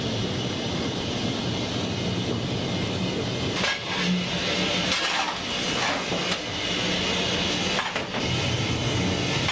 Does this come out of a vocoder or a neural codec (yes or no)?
no